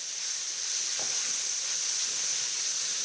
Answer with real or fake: real